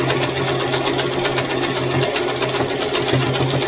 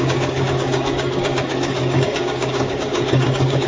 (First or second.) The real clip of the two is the first